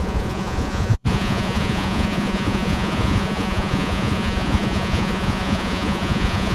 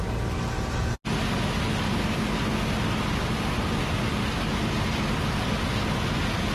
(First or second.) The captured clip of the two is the second